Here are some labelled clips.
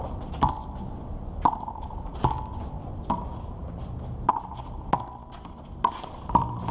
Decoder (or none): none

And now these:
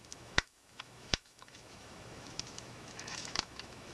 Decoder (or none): autoencoder, DAC-VAE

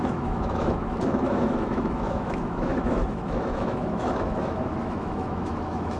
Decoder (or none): autoencoder, DAC-VAE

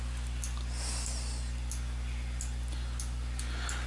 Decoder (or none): none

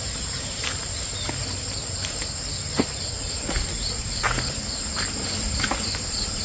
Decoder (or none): vocoder, BigVGAN v2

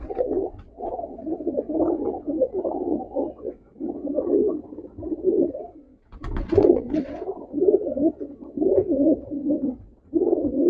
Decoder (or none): vocoder, WaveNeXt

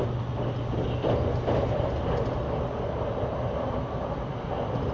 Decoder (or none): none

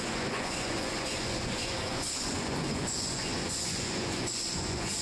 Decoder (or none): vocoder, Vocos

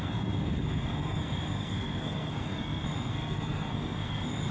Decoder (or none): codec, SNAC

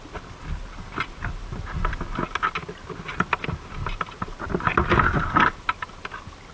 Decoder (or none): none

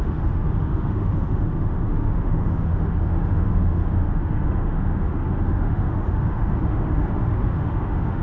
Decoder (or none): autoencoder, DAC-VAE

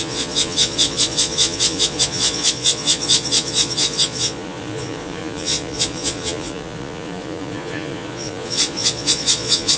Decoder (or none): vocoder, Vocos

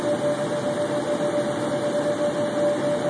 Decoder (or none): none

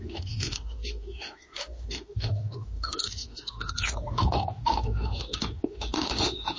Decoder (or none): autoencoder, DAC-VAE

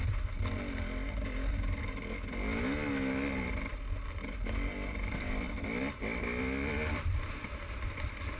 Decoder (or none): none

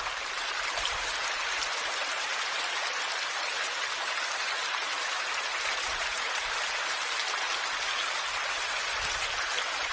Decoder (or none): none